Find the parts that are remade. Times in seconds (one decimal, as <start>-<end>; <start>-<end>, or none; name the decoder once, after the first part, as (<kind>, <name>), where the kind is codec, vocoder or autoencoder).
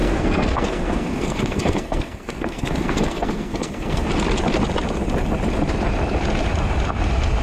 0.0-4.1 (codec, SNAC)